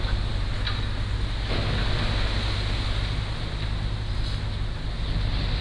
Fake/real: real